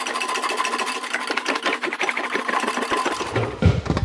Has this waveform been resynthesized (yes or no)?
no